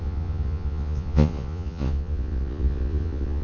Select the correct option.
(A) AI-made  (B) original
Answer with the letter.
A